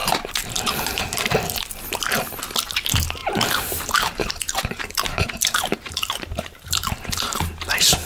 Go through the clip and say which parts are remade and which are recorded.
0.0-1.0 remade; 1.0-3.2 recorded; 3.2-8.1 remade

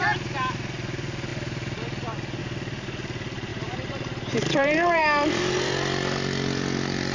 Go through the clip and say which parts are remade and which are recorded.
0.0-3.5 recorded; 3.5-5.7 remade; 5.7-7.1 recorded

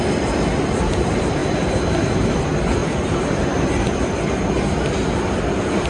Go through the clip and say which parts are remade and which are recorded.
0.0-2.8 remade; 2.8-3.8 recorded; 3.8-5.0 remade; 5.0-5.9 recorded

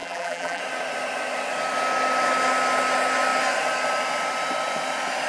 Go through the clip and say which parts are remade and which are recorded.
0.0-0.6 remade; 0.6-5.3 recorded

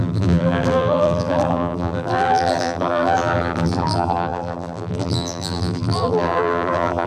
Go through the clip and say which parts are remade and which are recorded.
0.0-7.1 remade

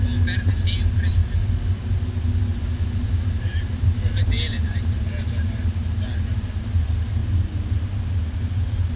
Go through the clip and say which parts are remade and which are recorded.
0.0-2.5 recorded; 2.5-5.1 remade; 5.1-9.0 recorded

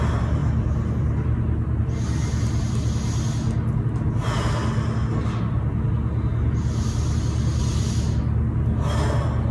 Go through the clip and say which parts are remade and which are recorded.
0.0-9.5 recorded